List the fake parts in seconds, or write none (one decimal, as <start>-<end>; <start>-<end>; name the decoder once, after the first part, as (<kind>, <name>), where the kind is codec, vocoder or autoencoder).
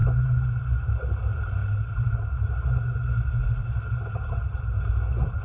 none